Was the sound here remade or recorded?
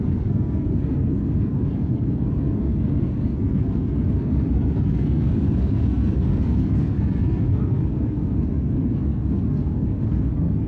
remade